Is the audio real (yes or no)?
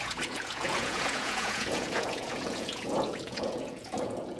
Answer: no